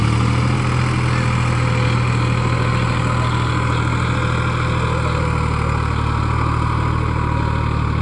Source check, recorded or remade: recorded